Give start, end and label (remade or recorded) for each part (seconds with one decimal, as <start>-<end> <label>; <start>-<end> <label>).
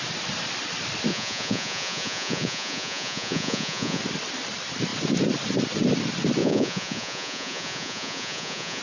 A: 0.0-1.1 recorded; 1.1-4.0 remade; 4.0-6.4 recorded; 6.4-8.8 remade